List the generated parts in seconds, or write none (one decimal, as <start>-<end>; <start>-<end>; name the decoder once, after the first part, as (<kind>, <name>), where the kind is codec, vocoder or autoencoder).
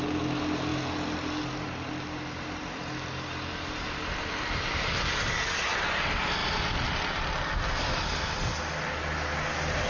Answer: none